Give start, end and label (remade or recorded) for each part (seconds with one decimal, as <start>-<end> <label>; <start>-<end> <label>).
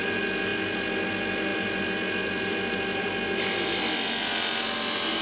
0.0-5.2 recorded